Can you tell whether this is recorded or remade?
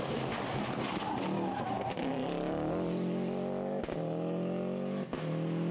recorded